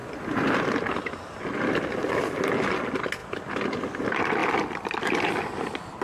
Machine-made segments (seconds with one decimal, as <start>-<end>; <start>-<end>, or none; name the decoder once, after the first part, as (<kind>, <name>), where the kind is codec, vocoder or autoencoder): 3.2-4.0 (vocoder, BigVGAN v2); 4.4-5.3